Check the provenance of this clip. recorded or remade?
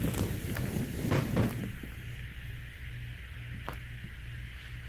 recorded